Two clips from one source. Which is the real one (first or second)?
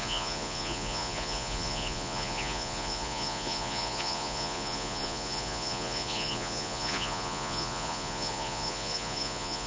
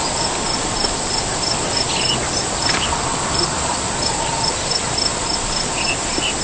second